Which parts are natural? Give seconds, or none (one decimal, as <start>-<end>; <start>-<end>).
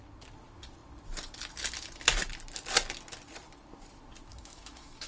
0.0-4.3